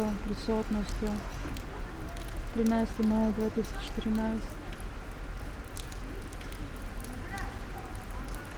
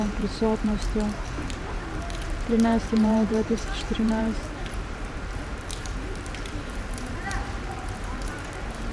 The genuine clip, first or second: first